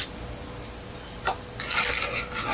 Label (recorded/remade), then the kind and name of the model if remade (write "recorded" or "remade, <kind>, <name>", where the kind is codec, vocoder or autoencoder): recorded